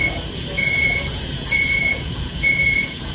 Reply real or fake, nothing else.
fake